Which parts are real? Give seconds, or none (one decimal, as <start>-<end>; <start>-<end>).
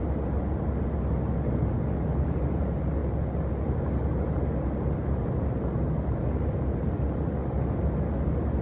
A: 0.0-8.6